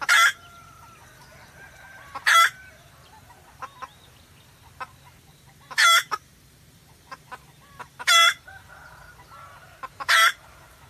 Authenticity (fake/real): fake